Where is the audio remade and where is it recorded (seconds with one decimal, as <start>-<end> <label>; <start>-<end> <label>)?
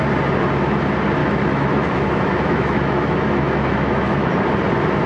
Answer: 0.0-1.2 recorded; 1.2-4.3 remade; 4.3-5.1 recorded